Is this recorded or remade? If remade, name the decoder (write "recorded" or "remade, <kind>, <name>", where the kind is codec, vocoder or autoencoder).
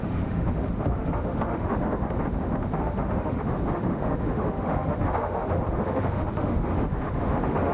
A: remade, autoencoder, DAC-VAE